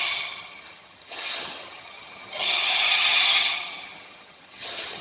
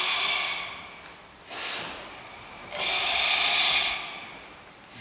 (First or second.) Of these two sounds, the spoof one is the first